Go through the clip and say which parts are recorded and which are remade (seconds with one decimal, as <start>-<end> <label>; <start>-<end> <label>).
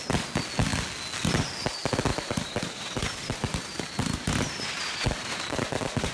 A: 0.0-2.1 recorded; 2.1-6.1 remade